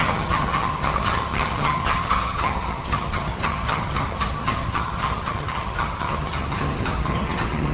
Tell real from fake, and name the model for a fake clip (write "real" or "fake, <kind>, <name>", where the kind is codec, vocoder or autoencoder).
fake, vocoder, HiFi-GAN